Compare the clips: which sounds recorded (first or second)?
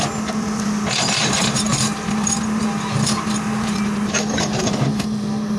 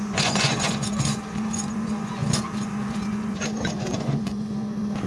first